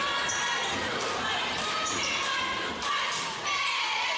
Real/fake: real